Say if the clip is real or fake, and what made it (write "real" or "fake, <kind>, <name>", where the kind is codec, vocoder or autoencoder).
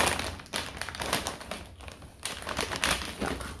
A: real